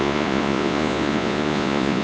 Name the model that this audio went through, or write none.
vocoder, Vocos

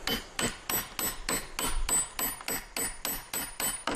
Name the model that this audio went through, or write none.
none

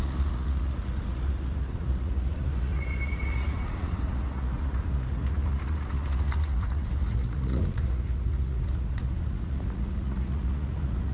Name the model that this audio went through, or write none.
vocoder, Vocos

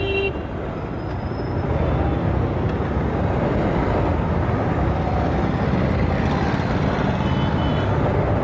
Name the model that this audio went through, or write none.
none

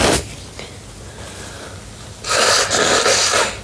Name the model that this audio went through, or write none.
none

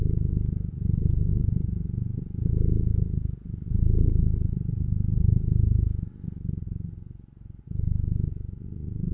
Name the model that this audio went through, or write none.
none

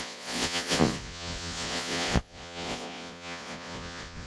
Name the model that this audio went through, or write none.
vocoder, Vocos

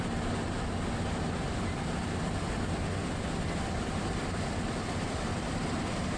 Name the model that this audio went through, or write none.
none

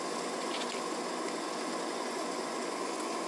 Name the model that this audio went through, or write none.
vocoder, Vocos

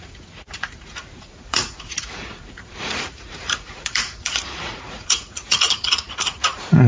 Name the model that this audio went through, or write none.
vocoder, Vocos